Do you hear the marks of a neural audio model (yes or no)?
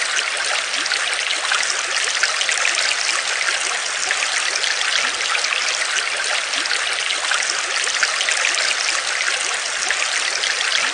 no